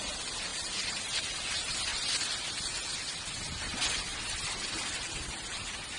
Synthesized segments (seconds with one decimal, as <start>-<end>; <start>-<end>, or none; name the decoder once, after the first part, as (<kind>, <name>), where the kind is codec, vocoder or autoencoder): 4.1-4.8 (vocoder, BigVGAN v2)